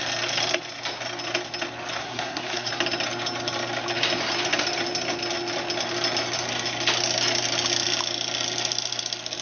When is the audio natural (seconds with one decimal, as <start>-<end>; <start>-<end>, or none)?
0.0-2.0; 2.7-9.4